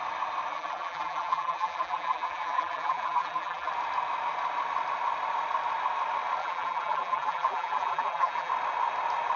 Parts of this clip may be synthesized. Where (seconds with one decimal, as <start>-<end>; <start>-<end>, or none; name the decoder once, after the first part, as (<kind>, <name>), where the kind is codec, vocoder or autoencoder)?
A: 0.5-3.7 (vocoder, BigVGAN v2); 6.4-8.5